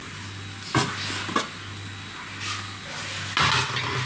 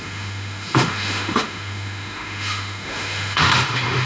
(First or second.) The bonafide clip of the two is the first